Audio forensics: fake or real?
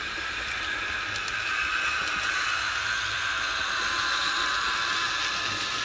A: real